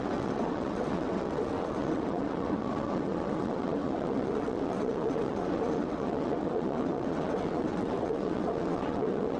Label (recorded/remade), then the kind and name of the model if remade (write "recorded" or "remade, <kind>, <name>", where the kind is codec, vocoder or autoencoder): remade, vocoder, WaveNeXt